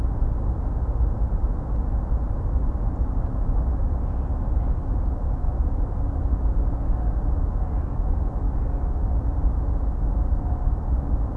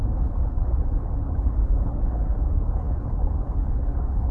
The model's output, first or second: second